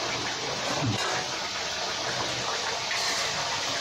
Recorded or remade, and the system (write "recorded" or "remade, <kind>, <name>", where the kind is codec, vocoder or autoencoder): recorded